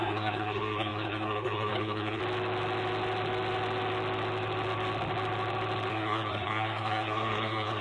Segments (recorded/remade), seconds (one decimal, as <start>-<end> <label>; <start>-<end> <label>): 0.0-2.2 remade; 2.2-5.9 recorded; 5.9-7.8 remade